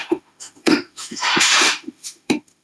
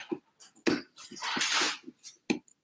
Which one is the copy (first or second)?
first